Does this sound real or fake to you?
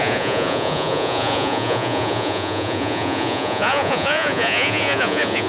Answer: fake